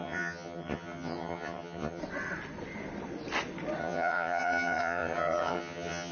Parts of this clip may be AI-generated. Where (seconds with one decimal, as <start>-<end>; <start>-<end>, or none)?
0.0-2.0; 3.8-6.1

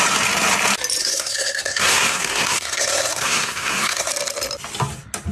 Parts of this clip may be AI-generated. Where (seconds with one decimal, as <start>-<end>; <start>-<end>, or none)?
1.0-4.1

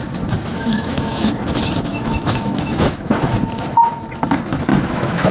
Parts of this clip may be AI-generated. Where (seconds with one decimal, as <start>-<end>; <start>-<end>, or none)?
0.5-1.3; 1.9-3.2; 4.7-5.3

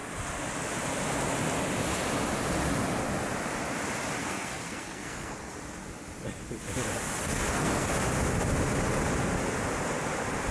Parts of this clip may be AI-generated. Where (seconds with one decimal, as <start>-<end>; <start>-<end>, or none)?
4.2-5.6; 7.2-7.9

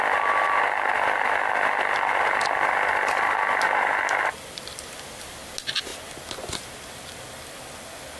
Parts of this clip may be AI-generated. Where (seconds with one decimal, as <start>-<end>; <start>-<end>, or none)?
none

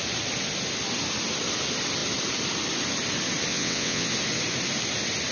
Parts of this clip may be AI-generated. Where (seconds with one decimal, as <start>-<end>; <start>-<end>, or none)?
3.5-4.1

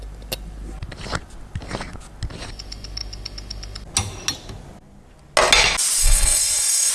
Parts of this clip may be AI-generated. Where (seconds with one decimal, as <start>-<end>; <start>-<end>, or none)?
6.0-6.9